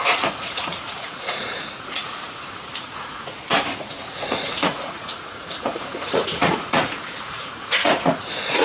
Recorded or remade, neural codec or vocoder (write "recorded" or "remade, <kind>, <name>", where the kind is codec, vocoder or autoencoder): remade, vocoder, Vocos